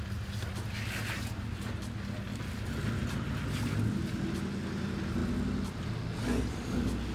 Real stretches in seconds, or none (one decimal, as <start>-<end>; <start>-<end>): 0.0-3.0; 4.0-7.1